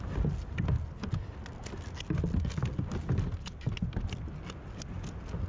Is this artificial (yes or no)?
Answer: no